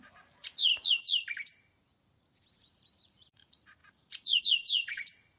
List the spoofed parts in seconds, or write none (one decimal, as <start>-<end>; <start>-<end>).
0.0-0.7; 2.5-5.4